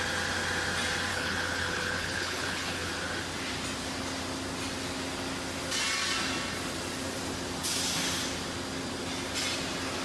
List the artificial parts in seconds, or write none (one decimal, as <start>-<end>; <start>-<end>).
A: 1.1-2.9